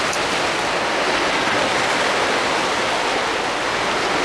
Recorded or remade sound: recorded